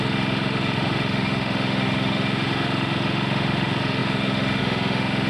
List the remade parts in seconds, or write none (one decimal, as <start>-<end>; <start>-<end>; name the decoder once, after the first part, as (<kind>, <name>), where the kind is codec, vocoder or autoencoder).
0.0-5.3 (autoencoder, DAC-VAE)